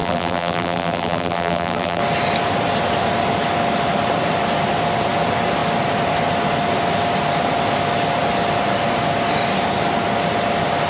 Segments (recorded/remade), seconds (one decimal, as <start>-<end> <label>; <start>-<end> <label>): 0.0-2.0 remade; 2.0-10.9 recorded